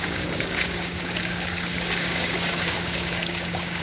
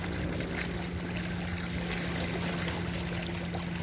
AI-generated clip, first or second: first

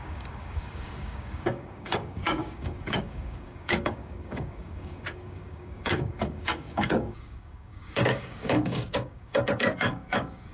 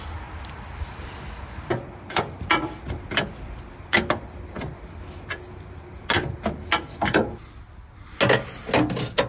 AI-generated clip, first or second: first